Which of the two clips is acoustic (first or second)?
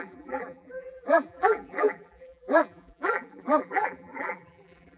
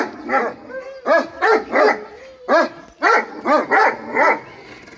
second